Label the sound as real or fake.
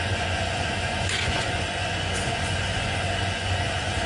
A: fake